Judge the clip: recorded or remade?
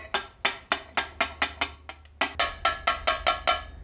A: recorded